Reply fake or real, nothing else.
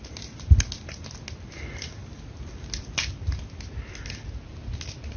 real